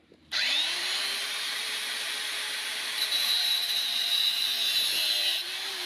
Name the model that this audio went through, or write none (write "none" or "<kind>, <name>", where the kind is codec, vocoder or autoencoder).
vocoder, BigVGAN v2